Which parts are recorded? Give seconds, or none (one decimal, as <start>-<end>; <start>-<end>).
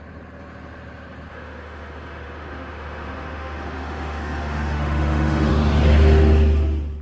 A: 0.0-1.3; 5.5-7.0